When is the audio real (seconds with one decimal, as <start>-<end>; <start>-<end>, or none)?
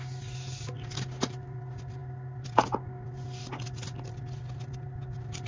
0.0-5.5